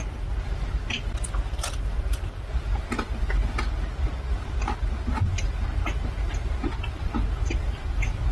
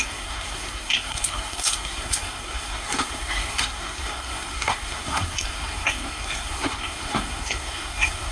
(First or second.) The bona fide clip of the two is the first